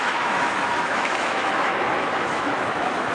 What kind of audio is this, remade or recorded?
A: remade